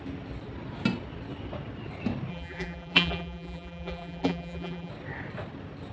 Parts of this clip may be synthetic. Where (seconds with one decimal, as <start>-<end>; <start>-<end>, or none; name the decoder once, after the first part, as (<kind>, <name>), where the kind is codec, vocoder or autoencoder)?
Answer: 2.3-4.9 (vocoder, BigVGAN v2)